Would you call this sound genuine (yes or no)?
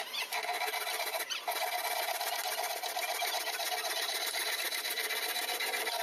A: yes